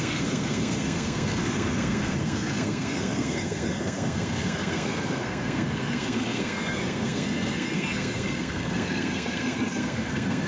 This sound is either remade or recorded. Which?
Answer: remade